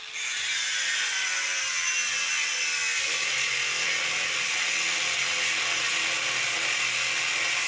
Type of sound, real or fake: real